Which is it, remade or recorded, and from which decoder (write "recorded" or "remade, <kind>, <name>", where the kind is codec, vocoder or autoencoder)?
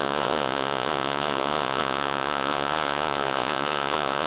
remade, vocoder, Vocos